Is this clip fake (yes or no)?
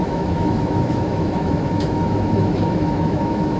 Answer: yes